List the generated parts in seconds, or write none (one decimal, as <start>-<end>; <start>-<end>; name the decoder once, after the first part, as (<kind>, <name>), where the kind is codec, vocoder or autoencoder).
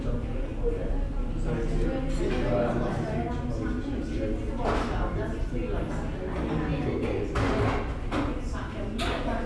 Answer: none